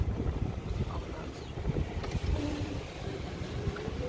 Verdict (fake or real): fake